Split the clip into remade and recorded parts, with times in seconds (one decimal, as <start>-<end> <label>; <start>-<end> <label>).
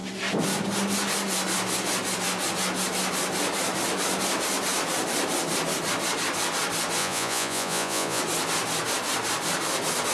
0.0-7.0 recorded; 7.0-8.2 remade; 8.2-10.1 recorded